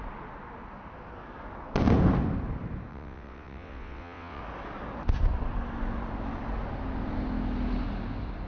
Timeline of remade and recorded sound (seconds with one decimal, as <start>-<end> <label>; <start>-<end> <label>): 0.0-2.9 recorded; 2.9-4.4 remade; 4.4-8.5 recorded